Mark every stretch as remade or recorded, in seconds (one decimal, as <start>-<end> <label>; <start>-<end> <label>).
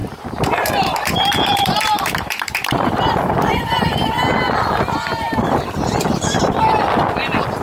0.0-3.6 remade; 3.6-7.6 recorded